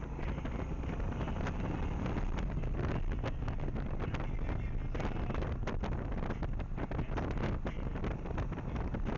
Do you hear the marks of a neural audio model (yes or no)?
no